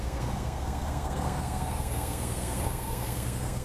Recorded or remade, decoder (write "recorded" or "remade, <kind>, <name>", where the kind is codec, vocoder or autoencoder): remade, codec, SNAC